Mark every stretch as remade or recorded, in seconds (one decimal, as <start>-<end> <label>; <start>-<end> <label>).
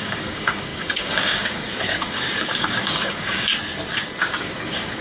0.0-3.5 remade; 3.5-4.4 recorded; 4.4-5.0 remade